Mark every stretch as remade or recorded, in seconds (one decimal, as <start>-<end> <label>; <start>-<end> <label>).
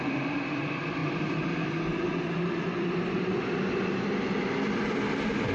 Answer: 0.0-5.5 recorded